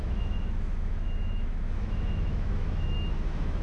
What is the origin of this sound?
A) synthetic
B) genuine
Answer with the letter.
A